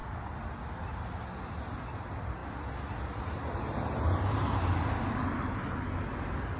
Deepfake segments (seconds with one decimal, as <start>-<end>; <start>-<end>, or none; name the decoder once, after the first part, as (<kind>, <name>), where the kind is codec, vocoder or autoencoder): none